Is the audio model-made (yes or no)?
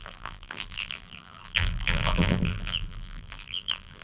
yes